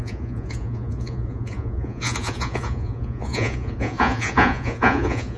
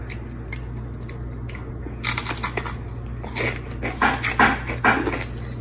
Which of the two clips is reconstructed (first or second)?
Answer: first